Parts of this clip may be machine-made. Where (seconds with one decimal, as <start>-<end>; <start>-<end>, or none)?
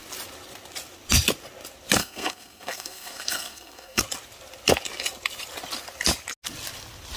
2.0-4.0